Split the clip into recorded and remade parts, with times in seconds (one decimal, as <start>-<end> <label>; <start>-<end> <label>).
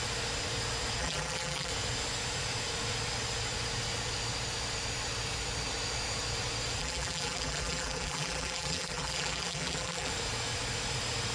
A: 0.0-1.0 recorded; 1.0-1.7 remade; 1.7-6.8 recorded; 6.8-10.1 remade; 10.1-11.3 recorded